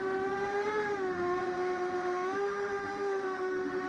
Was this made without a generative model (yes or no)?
no